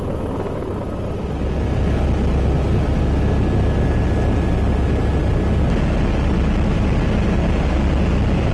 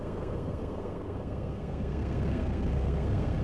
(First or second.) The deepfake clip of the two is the second